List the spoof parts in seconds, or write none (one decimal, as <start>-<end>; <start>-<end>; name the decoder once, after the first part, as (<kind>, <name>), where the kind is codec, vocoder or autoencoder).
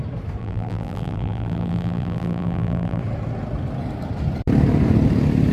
0.4-3.0 (vocoder, BigVGAN v2)